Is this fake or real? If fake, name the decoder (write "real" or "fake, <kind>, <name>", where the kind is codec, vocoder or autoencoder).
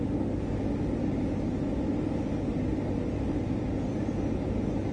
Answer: real